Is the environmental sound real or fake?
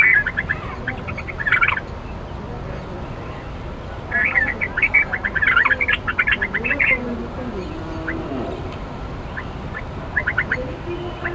real